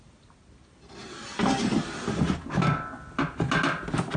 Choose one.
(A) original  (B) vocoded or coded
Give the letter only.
A